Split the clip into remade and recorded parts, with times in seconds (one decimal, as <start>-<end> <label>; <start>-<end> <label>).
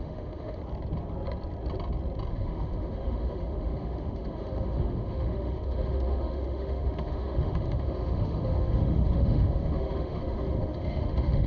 0.0-0.6 remade; 0.6-2.3 recorded; 2.3-11.5 remade